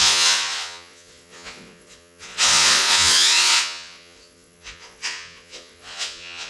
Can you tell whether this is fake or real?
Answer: fake